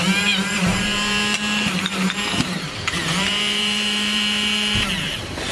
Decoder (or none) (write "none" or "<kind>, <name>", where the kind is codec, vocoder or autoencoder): vocoder, BigVGAN v2